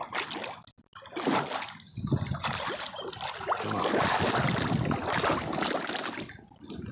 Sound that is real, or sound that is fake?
real